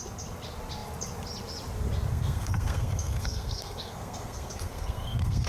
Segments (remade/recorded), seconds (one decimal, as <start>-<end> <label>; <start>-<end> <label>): 0.0-2.1 recorded; 2.1-5.5 remade